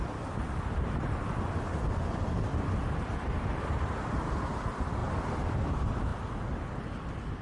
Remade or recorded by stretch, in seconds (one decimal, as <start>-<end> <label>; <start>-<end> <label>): 0.0-5.0 remade; 5.0-5.5 recorded; 5.5-6.1 remade; 6.1-6.8 recorded; 6.8-7.4 remade